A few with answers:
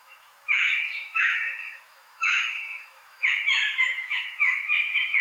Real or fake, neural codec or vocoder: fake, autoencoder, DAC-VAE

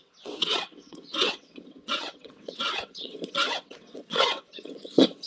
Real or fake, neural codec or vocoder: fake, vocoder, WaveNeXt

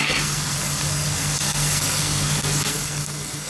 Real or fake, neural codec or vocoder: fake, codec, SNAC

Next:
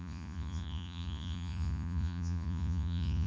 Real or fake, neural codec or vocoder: fake, vocoder, Vocos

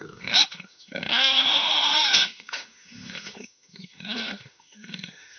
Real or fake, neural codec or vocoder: fake, autoencoder, DAC-VAE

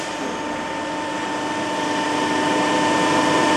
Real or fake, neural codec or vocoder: real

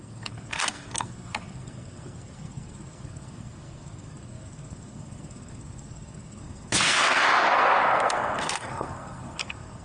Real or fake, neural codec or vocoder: fake, codec, SNAC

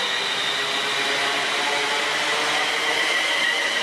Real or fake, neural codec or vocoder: real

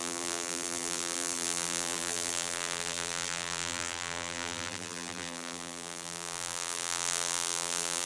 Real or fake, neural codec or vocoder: fake, vocoder, BigVGAN v2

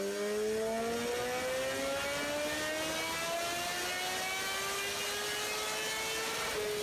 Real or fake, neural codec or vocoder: real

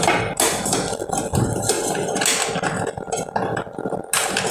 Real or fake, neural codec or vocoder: real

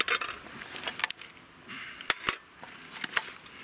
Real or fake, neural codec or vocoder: real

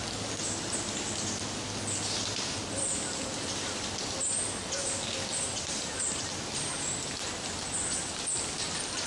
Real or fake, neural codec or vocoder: real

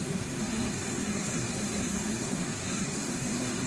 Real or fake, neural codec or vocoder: fake, codec, SNAC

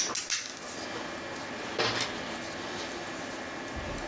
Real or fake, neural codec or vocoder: real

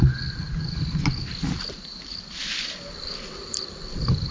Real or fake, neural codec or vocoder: real